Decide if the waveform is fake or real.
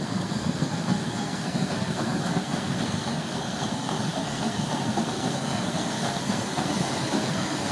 fake